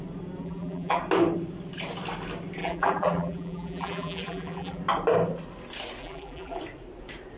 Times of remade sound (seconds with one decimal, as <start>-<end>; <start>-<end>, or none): 0.4-1.0; 2.6-4.8; 6.0-6.6